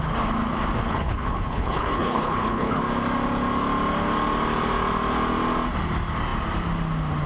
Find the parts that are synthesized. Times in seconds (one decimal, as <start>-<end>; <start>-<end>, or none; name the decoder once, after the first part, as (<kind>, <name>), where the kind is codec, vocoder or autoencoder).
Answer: 0.9-2.8 (codec, HILCodec)